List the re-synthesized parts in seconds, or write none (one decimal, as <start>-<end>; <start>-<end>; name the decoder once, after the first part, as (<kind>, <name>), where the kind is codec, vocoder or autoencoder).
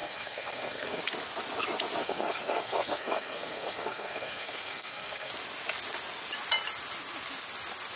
0.0-1.0 (codec, SNAC); 2.0-5.3